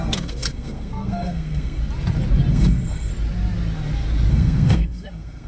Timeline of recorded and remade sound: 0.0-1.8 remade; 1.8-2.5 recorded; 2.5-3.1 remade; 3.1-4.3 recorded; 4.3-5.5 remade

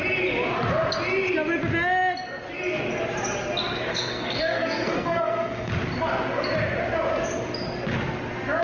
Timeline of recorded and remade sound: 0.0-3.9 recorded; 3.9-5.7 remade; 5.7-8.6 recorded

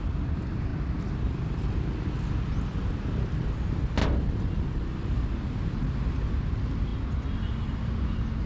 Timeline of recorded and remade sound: 0.0-8.5 recorded

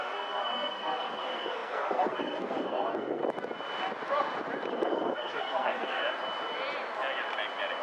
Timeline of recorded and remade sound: 0.0-3.2 remade; 3.2-4.7 recorded; 4.7-6.0 remade; 6.0-7.8 recorded

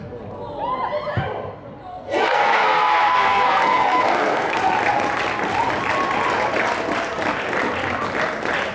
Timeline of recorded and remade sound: 0.0-1.9 recorded; 1.9-4.6 remade; 4.6-8.7 recorded

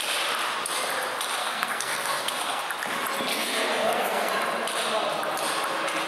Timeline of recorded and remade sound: 0.0-1.4 recorded; 1.4-2.6 remade; 2.6-3.3 recorded; 3.3-4.3 remade; 4.3-6.1 recorded

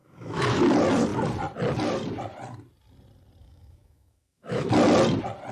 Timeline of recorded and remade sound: 0.0-0.6 remade; 0.6-3.4 recorded; 3.4-4.7 remade; 4.7-5.5 recorded

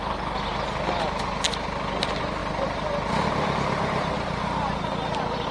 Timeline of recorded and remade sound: 0.0-2.4 recorded; 2.4-4.8 remade; 4.8-5.5 recorded